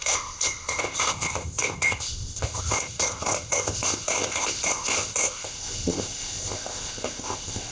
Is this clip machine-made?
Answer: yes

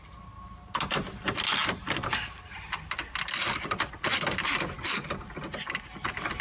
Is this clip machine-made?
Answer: no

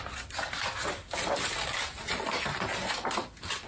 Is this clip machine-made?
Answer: no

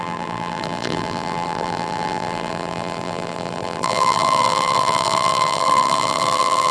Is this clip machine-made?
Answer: yes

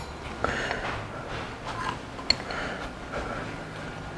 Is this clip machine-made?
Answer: no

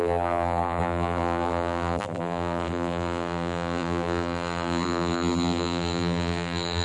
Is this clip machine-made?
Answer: yes